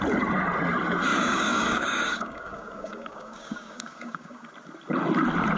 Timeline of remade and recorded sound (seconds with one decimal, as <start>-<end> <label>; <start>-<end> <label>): 0.0-1.1 recorded; 1.1-4.5 remade; 4.5-5.6 recorded